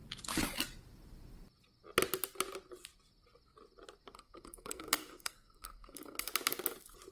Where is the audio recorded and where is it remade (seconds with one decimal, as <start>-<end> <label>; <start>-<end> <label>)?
0.0-4.1 recorded; 4.1-6.3 remade; 6.3-7.1 recorded